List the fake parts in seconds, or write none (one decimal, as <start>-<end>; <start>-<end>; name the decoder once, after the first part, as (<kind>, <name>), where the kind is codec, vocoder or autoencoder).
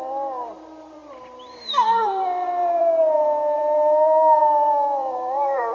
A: 0.0-5.7 (vocoder, BigVGAN v2)